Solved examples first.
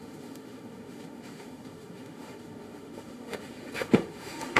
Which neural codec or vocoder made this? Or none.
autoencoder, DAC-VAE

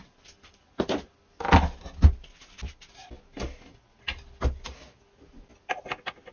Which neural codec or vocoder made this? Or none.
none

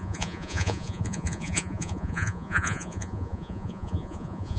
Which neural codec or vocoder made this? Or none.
vocoder, Vocos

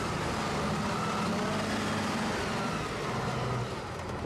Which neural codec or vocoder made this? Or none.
none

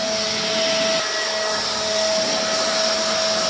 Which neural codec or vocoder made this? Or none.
none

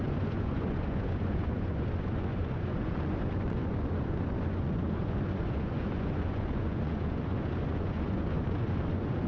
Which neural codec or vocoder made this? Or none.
vocoder, Vocos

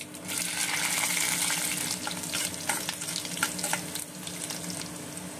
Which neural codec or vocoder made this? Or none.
none